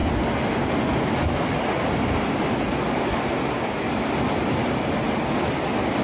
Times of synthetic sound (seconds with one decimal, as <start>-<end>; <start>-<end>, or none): none